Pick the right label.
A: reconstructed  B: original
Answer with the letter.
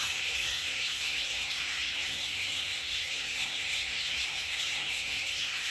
A